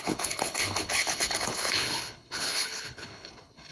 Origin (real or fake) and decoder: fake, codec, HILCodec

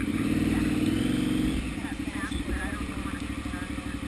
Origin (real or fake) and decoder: real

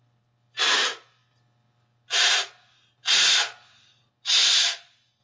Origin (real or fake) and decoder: real